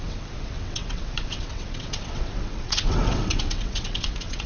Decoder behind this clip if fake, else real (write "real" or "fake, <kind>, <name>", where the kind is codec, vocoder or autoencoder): fake, vocoder, WaveNeXt